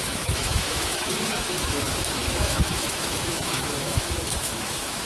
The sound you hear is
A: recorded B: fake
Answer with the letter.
B